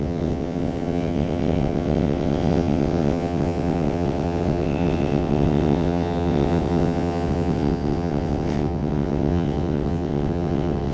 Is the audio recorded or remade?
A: remade